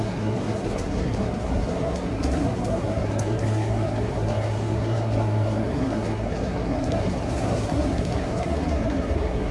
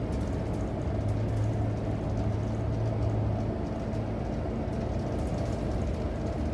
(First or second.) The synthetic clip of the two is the first